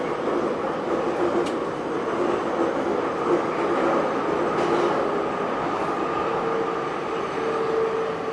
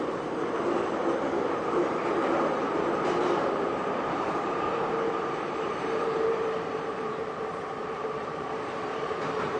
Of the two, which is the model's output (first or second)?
second